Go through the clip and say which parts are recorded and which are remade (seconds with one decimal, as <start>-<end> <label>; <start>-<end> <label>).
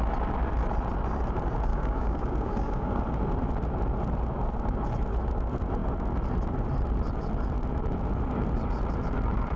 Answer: 0.0-1.7 recorded; 1.7-3.0 remade; 3.0-9.6 recorded